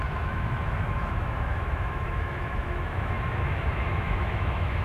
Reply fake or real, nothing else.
fake